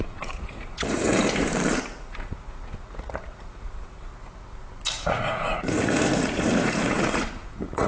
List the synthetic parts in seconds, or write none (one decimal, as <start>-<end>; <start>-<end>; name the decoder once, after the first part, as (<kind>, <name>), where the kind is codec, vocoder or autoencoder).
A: 0.0-1.5 (vocoder, Vocos); 2.0-4.1; 5.1-7.9